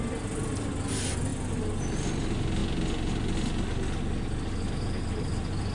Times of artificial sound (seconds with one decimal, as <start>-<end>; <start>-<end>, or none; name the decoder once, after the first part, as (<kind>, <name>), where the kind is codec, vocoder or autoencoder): 0.0-2.6 (vocoder, BigVGAN v2); 5.0-5.7